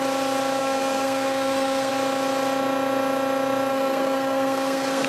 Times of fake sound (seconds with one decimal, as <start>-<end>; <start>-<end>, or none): 0.6-1.9; 3.7-5.1